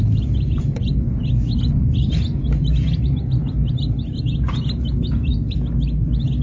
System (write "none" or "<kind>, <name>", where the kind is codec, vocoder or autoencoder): none